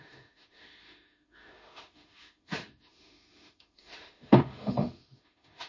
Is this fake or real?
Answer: fake